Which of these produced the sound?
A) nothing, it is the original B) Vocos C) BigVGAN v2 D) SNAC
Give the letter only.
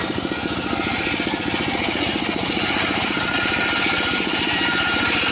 A